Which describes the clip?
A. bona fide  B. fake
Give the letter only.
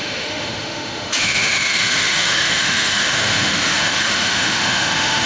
B